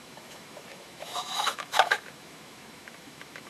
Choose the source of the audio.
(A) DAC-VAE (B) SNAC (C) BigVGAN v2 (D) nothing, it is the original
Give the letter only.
A